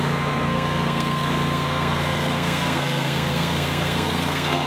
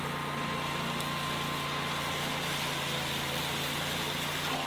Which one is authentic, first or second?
second